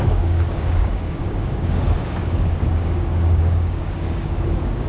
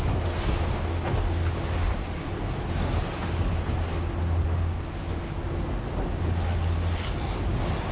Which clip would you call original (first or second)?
second